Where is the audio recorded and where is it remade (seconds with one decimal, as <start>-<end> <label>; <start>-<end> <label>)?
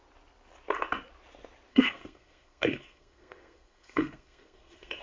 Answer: 0.0-1.7 recorded; 1.7-5.0 remade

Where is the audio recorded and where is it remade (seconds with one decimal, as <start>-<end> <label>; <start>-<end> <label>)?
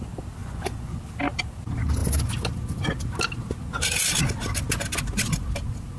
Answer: 0.0-0.4 recorded; 0.4-1.0 remade; 1.0-6.0 recorded